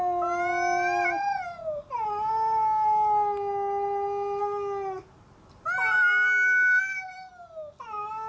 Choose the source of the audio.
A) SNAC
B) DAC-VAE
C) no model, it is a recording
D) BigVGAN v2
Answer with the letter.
C